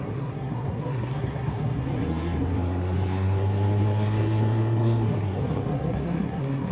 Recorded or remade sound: remade